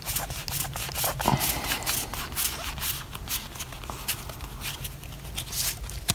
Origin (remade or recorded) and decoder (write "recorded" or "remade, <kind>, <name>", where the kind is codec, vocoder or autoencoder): recorded